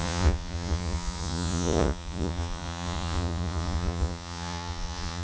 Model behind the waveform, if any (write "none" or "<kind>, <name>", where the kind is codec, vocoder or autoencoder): vocoder, Vocos